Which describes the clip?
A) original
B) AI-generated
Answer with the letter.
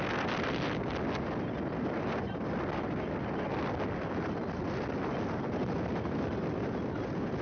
A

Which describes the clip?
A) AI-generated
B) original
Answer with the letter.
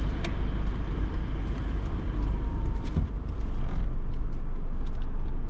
B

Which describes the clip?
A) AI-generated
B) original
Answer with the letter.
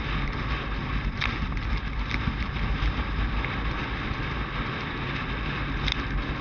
B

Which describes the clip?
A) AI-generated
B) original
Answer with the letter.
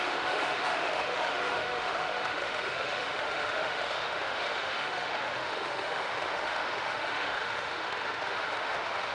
A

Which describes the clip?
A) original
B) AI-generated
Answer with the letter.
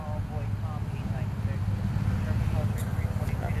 A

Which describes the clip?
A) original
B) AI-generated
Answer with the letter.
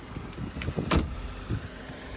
A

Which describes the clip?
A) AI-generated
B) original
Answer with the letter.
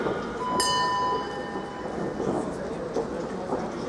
B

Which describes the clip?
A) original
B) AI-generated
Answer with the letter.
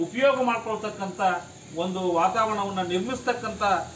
A